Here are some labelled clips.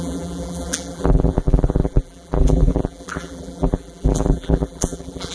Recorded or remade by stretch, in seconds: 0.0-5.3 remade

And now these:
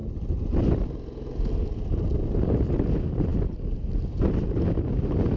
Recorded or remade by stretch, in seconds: 0.0-5.4 recorded

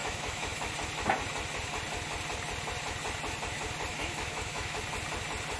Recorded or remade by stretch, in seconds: 0.0-0.7 remade; 0.7-3.9 recorded; 3.9-4.8 remade; 4.8-5.6 recorded

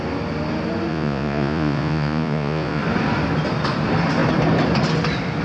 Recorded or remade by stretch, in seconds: 0.0-0.9 recorded; 0.9-2.8 remade; 2.8-5.4 recorded

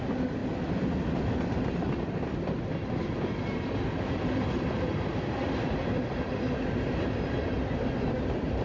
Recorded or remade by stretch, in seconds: 0.0-8.6 recorded